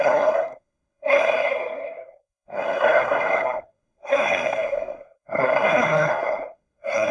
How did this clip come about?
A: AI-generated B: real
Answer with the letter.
A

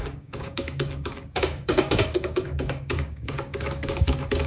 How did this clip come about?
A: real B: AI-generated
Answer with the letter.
B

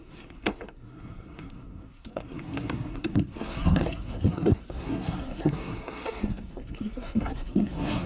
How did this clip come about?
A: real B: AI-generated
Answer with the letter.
B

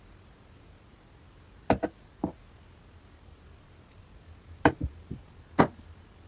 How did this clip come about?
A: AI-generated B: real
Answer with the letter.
B